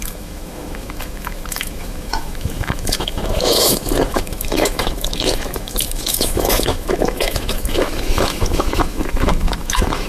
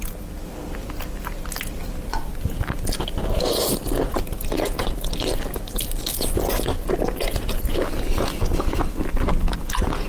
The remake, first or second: first